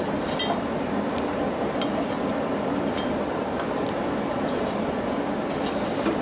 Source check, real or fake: real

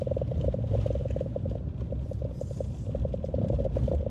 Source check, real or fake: real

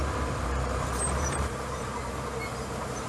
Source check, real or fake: fake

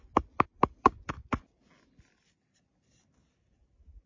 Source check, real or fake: real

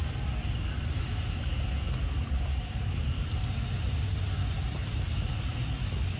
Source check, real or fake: real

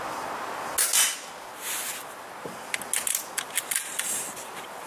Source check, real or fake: real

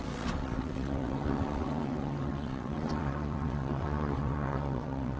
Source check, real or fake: fake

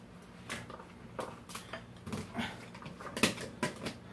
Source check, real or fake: real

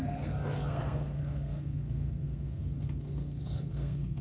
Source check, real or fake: fake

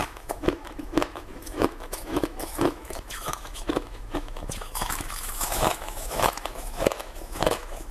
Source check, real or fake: fake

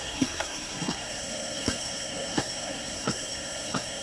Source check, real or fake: fake